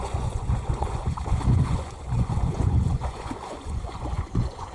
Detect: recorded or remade remade